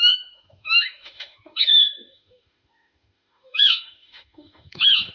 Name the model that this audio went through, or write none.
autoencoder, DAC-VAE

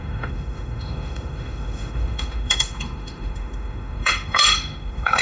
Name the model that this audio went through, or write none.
autoencoder, DAC-VAE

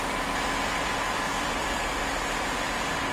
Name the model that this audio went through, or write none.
none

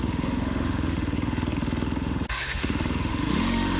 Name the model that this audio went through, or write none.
autoencoder, DAC-VAE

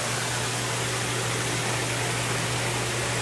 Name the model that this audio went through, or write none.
none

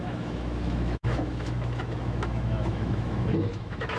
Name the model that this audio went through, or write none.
autoencoder, DAC-VAE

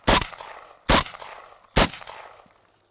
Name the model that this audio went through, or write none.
none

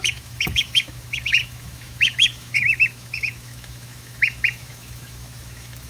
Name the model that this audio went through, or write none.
autoencoder, DAC-VAE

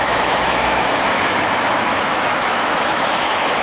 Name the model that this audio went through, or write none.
autoencoder, DAC-VAE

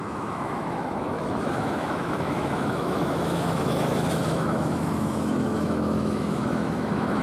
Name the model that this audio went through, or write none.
autoencoder, DAC-VAE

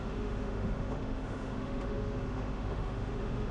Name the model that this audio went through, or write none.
autoencoder, DAC-VAE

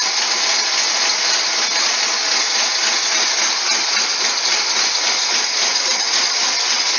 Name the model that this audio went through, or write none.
none